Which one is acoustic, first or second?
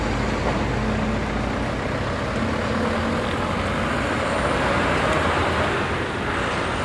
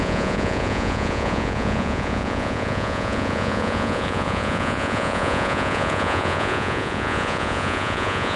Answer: first